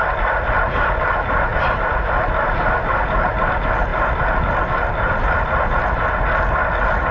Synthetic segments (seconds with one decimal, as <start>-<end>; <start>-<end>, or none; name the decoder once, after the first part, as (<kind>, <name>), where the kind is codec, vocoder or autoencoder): none